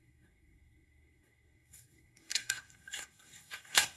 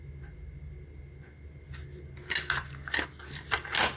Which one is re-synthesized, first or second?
first